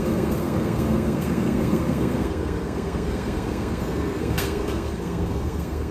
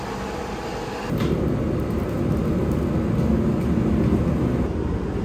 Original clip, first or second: second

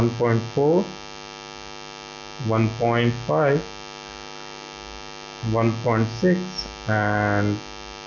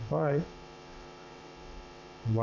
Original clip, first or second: first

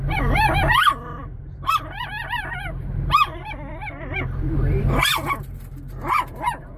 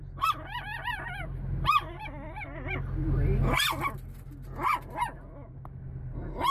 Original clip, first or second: second